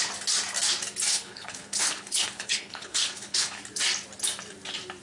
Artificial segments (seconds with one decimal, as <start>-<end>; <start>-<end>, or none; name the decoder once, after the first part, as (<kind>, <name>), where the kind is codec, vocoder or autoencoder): 1.1-3.6 (codec, HILCodec)